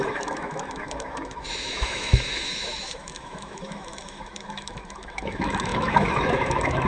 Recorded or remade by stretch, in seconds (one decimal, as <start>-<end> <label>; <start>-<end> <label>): 0.0-6.9 remade